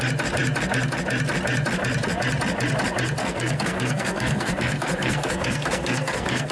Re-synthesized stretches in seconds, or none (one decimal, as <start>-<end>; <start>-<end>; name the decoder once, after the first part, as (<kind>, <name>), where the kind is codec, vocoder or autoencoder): 3.2-6.5 (codec, SNAC)